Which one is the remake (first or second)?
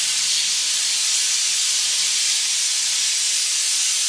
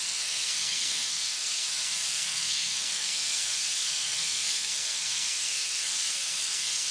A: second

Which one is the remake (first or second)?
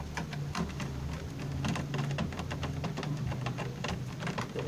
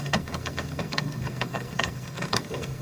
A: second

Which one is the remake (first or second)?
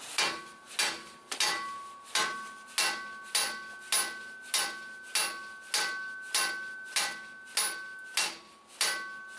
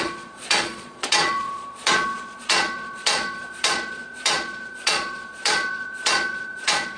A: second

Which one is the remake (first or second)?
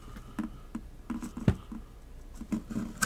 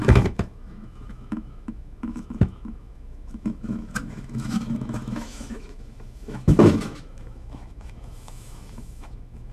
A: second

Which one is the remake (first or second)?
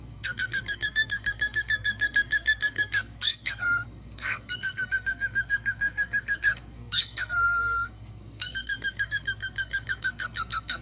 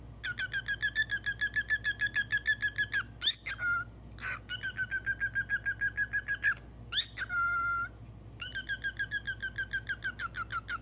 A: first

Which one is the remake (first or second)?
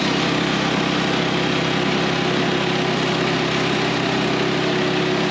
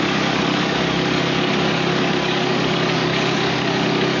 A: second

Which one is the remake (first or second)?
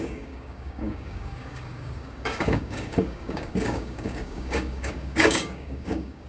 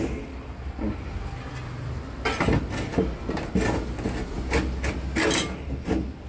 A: first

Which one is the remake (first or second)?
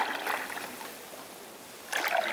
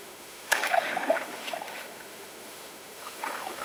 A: second